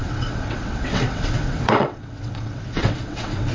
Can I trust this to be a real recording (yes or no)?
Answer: no